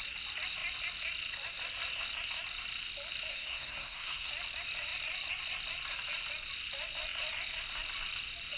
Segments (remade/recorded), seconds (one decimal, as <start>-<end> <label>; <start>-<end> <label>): 0.0-3.3 recorded; 3.3-4.3 remade; 4.3-8.6 recorded